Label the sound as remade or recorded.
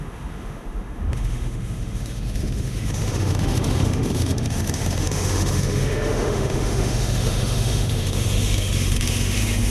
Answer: remade